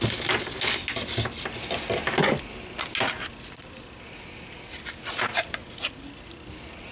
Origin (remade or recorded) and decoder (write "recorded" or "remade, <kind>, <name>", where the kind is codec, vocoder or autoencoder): recorded